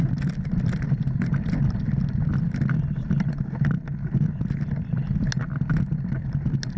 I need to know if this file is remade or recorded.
recorded